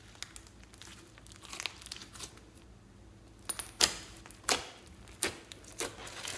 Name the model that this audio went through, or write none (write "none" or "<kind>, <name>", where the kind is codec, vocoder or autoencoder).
none